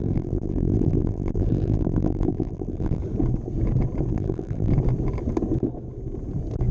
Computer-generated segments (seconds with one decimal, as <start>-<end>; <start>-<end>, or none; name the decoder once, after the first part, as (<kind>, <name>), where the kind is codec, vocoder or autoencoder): 0.0-3.0 (vocoder, BigVGAN v2); 4.1-4.7